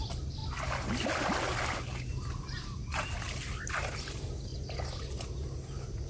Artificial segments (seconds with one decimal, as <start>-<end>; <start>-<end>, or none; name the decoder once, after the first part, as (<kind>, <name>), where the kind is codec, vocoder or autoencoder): none